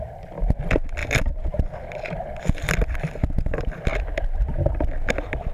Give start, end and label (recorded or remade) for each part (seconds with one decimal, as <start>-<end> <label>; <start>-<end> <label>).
0.0-1.0 recorded; 1.0-1.6 remade; 1.6-5.5 recorded